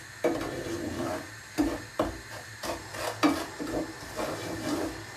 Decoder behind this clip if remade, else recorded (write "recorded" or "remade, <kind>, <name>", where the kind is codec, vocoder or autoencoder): recorded